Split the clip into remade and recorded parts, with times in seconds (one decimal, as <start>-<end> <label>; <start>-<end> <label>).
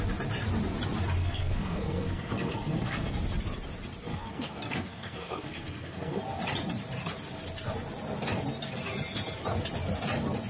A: 0.0-1.2 recorded; 1.2-3.1 remade; 3.1-4.1 recorded; 4.1-6.2 remade; 6.2-10.5 recorded